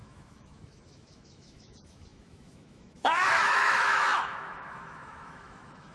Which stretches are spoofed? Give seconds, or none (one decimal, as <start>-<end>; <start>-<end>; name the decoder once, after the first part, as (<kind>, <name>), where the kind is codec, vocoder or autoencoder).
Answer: 0.0-5.9 (autoencoder, DAC-VAE)